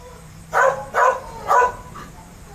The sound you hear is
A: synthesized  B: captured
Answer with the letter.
B